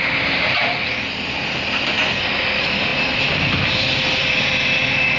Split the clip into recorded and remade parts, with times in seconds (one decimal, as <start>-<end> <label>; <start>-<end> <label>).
0.0-5.2 recorded